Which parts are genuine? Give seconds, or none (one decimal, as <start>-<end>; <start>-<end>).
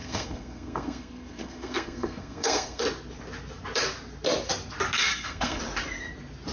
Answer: 2.8-5.1; 5.6-6.5